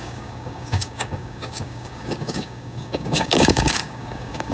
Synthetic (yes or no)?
yes